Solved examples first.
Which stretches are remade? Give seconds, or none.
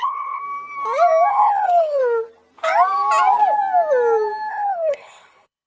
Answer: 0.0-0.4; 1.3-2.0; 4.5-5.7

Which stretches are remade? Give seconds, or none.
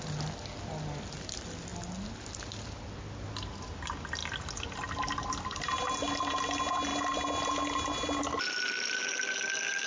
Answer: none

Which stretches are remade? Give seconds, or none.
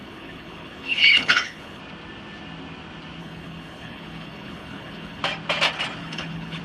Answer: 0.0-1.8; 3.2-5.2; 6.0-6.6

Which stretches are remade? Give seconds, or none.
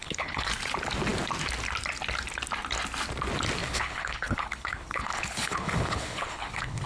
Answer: 0.0-0.5; 3.6-6.9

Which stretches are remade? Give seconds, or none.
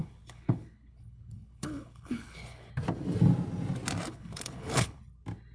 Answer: 0.0-2.7; 4.1-5.0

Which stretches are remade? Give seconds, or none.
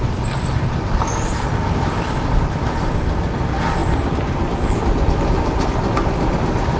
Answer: none